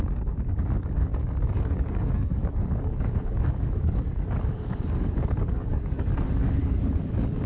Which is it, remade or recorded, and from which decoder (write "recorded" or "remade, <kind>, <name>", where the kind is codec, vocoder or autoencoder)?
remade, codec, DAC